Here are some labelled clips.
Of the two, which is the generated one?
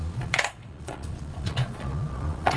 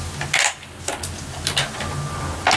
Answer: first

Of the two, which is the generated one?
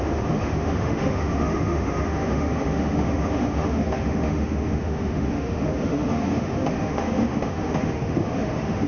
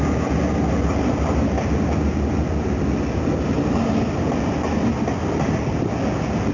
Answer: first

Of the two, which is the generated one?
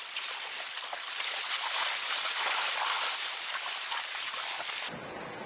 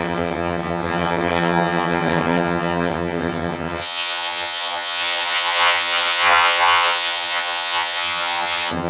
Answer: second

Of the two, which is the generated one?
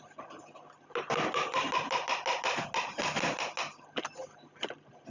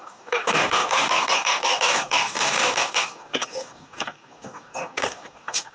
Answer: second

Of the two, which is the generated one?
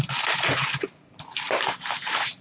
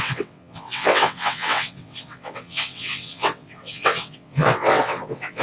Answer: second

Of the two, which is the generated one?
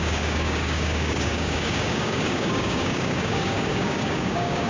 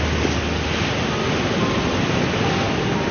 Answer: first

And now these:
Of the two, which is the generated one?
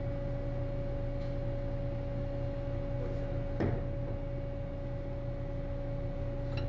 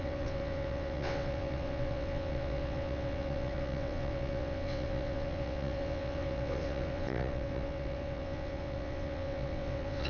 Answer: second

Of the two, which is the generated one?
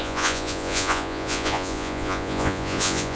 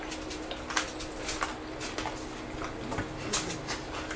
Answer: first